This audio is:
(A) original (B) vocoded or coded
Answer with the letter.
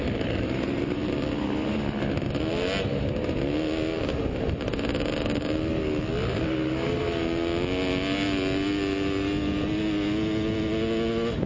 A